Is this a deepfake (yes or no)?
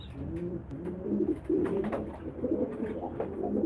no